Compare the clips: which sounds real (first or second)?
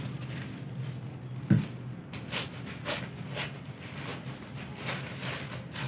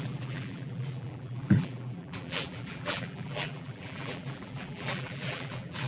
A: first